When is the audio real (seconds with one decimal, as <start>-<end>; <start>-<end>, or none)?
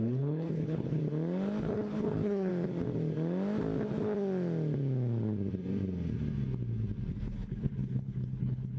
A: 1.0-1.6; 2.5-7.1